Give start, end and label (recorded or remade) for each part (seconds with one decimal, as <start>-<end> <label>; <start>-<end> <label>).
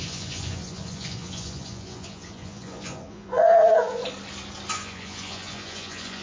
0.0-4.0 remade; 4.0-4.7 recorded; 4.7-6.2 remade